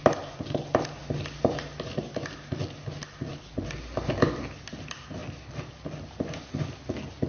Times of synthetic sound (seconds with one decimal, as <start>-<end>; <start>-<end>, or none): none